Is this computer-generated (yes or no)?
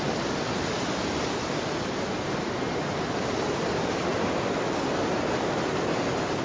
no